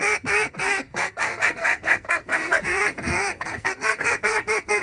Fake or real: fake